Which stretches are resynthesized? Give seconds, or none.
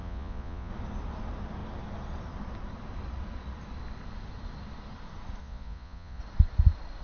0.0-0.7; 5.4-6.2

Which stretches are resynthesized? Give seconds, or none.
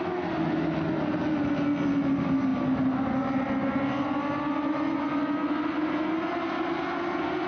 none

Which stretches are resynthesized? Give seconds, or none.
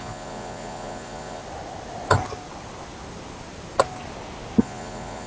0.0-1.4; 4.6-5.3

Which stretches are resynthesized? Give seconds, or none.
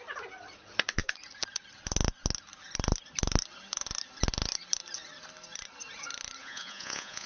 6.4-7.3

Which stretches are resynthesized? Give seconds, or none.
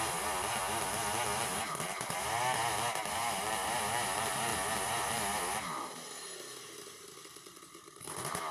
none